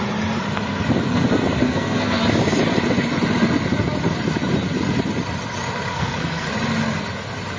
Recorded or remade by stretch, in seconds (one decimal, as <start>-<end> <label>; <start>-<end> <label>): 0.0-1.6 recorded; 1.6-2.2 remade; 2.2-5.9 recorded; 5.9-6.5 remade; 6.5-7.6 recorded